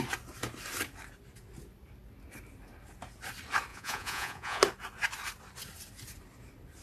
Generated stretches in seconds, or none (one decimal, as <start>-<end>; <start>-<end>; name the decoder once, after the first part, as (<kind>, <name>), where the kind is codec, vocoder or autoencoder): 3.7-4.6 (vocoder, Vocos)